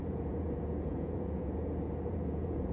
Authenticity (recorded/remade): remade